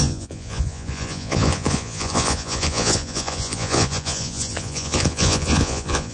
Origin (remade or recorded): remade